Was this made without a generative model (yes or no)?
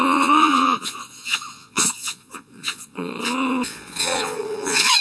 no